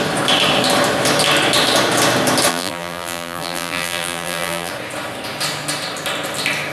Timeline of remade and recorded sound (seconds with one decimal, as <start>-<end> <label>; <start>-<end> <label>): 0.0-2.5 recorded; 2.5-4.7 remade; 4.7-6.7 recorded